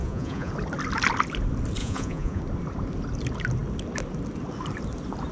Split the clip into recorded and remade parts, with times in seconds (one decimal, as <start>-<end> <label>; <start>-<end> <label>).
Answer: 0.0-0.5 remade; 0.5-1.8 recorded; 1.8-2.4 remade; 2.4-5.3 recorded